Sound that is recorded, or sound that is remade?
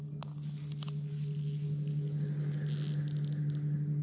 recorded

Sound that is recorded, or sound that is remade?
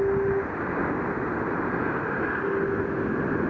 recorded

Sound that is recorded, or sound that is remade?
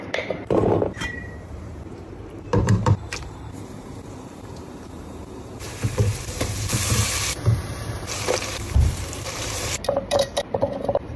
remade